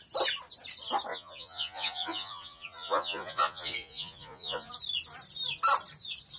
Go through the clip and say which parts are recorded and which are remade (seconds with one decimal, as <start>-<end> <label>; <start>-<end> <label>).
0.0-1.1 recorded; 1.1-4.7 remade; 4.7-6.4 recorded